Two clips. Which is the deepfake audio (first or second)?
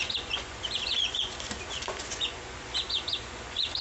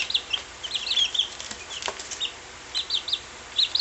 first